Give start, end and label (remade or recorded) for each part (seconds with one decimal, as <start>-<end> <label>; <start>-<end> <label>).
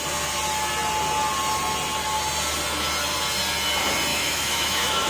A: 0.0-4.1 recorded; 4.1-5.1 remade